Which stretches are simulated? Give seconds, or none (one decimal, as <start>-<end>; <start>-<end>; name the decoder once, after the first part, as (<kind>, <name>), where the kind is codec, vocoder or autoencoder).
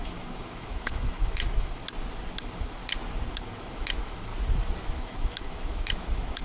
0.0-1.8 (autoencoder, DAC-VAE); 2.4-2.8; 3.3-4.3; 4.9-6.4